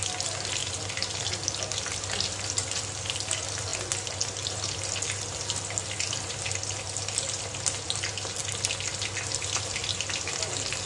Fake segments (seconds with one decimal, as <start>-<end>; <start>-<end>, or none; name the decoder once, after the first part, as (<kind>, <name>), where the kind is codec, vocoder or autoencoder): none